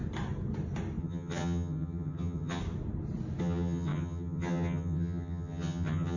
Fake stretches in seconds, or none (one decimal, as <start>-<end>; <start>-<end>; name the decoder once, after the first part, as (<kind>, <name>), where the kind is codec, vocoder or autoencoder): 1.0-2.6 (vocoder, HiFi-GAN); 3.4-6.2